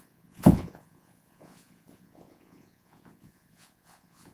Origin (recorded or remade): remade